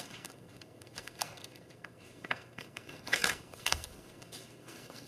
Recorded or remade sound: remade